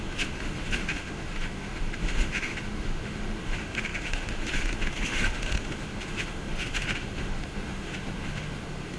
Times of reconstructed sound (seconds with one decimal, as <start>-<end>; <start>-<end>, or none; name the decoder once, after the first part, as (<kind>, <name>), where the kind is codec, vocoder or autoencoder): 0.0-9.0 (autoencoder, DAC-VAE)